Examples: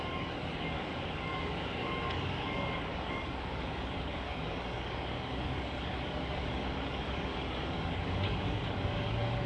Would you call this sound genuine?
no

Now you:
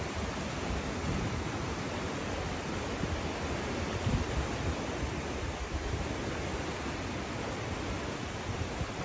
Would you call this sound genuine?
yes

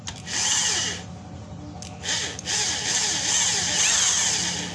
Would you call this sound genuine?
yes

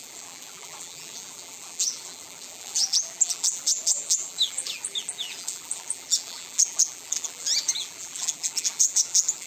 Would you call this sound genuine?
no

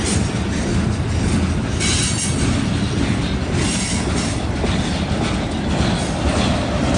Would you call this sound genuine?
yes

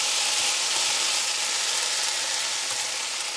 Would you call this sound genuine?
yes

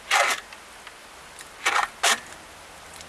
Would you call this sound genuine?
yes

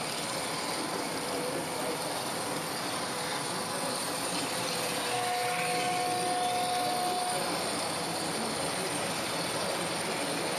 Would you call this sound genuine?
yes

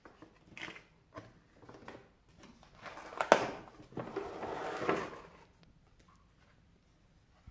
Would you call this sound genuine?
yes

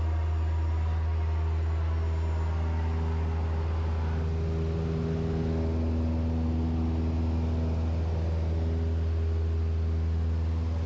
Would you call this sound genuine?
yes